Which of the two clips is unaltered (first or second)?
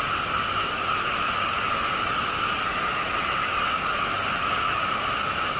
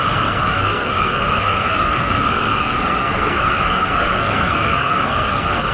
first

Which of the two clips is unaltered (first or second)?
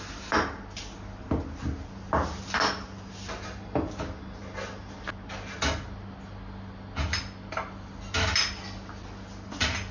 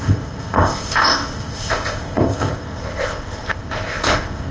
first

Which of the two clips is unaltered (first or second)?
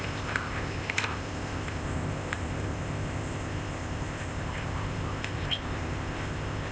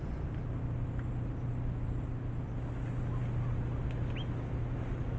second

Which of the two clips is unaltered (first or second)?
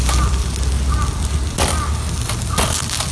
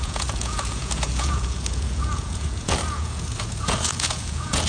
first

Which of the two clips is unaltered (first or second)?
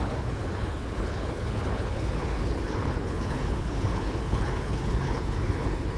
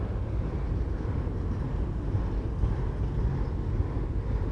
second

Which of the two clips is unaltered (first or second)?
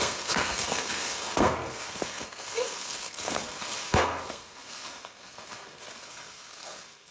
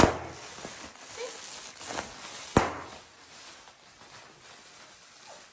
second